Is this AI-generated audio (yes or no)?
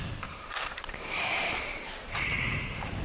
yes